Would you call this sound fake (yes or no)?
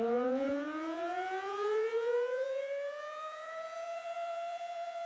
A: yes